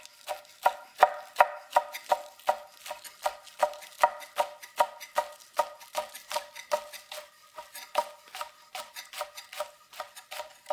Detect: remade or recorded recorded